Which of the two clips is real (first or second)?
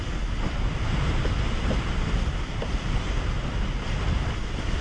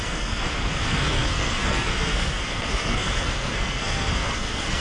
first